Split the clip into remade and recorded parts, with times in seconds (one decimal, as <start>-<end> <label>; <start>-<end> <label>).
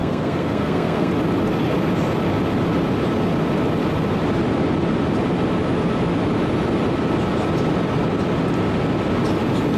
0.0-1.1 remade; 1.1-9.8 recorded